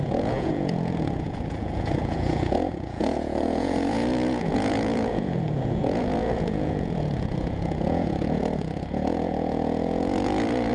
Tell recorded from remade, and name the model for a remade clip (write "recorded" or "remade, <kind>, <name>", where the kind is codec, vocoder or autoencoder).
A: remade, vocoder, Vocos